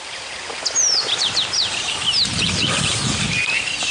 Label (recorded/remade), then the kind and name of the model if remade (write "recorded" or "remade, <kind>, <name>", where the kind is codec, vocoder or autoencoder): recorded